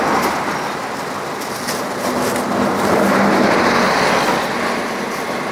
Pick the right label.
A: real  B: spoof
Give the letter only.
A